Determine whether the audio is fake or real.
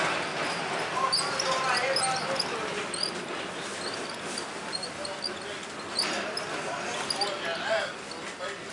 real